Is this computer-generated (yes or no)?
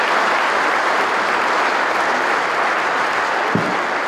no